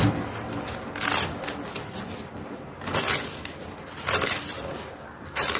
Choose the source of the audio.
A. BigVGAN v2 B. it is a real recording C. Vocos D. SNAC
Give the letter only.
B